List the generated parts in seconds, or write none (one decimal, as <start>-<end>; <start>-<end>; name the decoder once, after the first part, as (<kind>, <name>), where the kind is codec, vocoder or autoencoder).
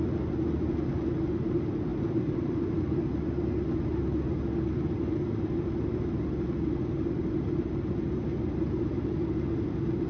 1.9-2.9 (vocoder, BigVGAN v2)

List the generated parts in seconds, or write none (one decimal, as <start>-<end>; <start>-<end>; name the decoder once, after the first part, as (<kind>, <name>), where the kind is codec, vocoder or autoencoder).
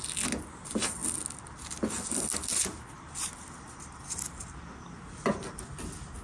none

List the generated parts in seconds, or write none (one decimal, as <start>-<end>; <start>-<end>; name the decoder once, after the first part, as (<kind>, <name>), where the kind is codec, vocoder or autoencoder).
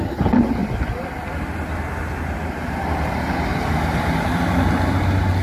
none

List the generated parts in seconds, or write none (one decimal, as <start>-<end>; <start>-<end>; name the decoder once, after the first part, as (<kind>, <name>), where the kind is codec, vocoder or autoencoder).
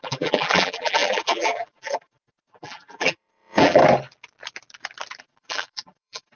0.0-3.8 (vocoder, BigVGAN v2); 5.2-6.4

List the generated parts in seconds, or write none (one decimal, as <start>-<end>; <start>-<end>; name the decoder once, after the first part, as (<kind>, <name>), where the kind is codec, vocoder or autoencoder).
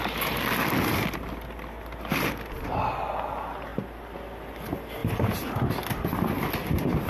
3.7-4.3 (vocoder, BigVGAN v2)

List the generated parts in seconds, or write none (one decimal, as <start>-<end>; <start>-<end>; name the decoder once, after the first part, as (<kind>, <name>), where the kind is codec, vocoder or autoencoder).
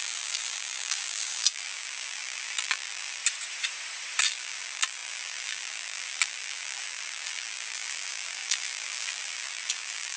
0.0-3.2 (vocoder, BigVGAN v2); 4.2-10.2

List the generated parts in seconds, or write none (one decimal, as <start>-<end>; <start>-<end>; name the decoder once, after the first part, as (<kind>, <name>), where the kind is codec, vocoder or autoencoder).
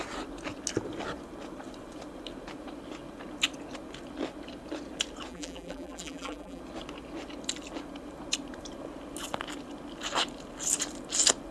5.3-6.6 (vocoder, BigVGAN v2)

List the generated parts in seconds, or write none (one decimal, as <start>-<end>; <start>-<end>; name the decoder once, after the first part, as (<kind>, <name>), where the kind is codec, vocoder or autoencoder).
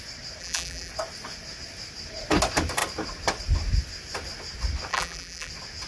0.4-0.9 (vocoder, BigVGAN v2); 4.9-5.5